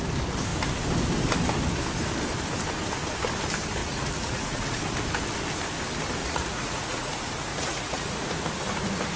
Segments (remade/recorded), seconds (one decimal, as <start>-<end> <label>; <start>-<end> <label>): 0.0-3.8 recorded; 3.8-4.8 remade; 4.8-6.2 recorded; 6.2-7.1 remade; 7.1-7.5 recorded; 7.5-8.2 remade; 8.2-9.2 recorded

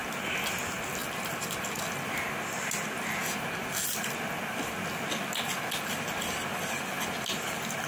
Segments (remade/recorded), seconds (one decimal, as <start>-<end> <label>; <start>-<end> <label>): 0.0-7.9 recorded

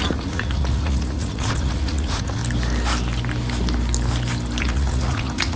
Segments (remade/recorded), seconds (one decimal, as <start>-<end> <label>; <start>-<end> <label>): 0.0-2.4 remade; 2.4-4.6 recorded; 4.6-5.6 remade